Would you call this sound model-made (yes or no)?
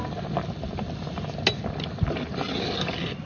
no